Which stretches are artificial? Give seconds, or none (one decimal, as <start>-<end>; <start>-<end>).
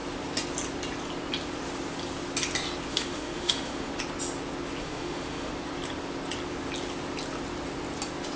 2.9-3.9; 4.8-5.5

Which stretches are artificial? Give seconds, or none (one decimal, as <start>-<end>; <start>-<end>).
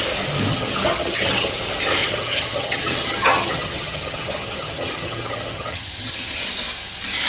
0.5-1.5; 2.0-6.4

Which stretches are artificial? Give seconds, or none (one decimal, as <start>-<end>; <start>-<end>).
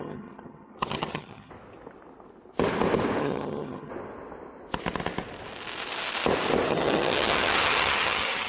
0.0-1.5; 3.2-3.9; 6.7-8.5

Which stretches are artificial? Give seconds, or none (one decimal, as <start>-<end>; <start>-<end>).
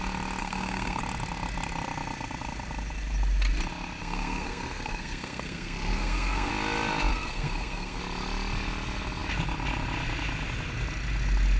0.4-1.0; 4.0-6.5; 7.1-8.0